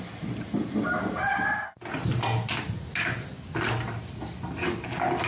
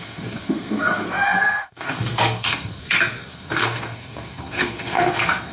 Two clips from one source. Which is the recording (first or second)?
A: first